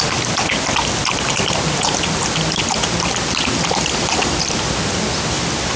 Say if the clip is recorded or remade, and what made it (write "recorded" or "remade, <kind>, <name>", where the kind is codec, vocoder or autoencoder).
recorded